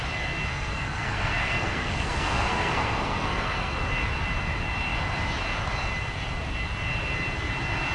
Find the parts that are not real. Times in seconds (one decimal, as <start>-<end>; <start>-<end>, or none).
0.5-3.7